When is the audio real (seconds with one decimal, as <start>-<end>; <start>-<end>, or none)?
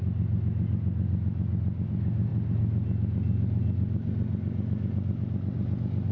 0.0-6.1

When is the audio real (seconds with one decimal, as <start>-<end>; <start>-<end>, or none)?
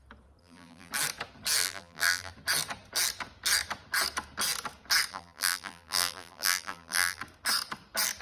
0.0-0.4; 0.9-1.6; 2.3-5.1; 7.2-8.2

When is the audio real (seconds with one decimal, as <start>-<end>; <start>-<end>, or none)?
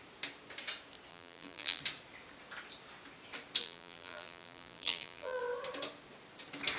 0.0-1.1; 1.8-3.6; 5.4-6.8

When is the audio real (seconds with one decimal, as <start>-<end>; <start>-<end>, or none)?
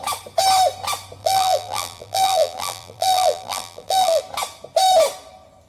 0.0-1.2; 4.2-5.7